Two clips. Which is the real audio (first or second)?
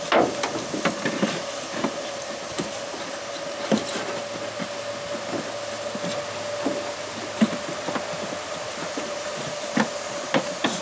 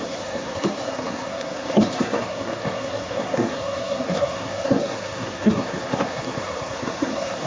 first